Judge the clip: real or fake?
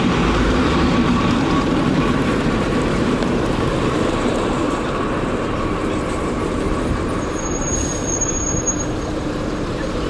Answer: fake